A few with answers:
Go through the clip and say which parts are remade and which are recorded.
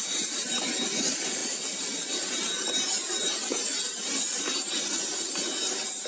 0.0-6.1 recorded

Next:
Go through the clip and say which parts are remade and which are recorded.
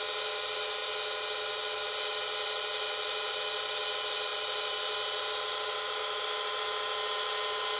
0.0-7.8 recorded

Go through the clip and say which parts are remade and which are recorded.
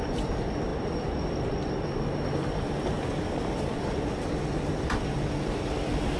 0.0-6.2 recorded